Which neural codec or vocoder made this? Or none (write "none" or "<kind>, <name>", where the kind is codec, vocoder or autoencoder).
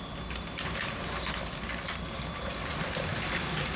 none